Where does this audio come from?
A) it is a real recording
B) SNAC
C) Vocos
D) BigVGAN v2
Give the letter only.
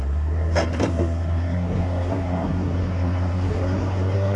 B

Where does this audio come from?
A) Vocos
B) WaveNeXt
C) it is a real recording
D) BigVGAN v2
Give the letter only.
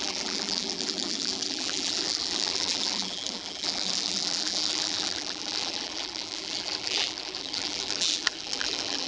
D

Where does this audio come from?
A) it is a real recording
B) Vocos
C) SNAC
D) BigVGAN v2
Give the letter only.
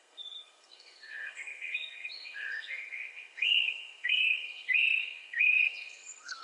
C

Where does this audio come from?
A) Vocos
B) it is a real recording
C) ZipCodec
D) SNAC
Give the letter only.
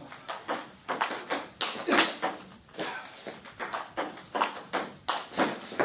B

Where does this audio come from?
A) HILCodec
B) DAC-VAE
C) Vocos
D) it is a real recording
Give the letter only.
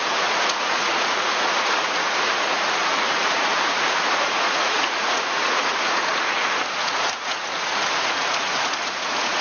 C